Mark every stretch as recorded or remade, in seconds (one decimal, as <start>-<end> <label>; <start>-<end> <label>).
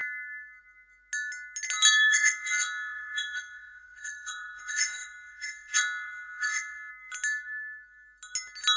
0.0-2.1 recorded; 2.1-6.9 remade; 6.9-8.8 recorded